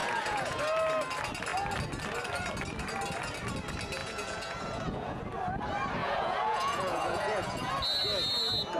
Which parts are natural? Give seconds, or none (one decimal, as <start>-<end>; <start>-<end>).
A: 0.6-4.0; 5.2-6.0; 7.7-8.8